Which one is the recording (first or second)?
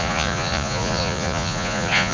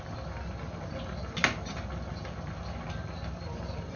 second